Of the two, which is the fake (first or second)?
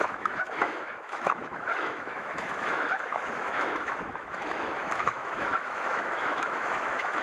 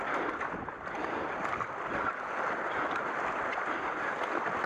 first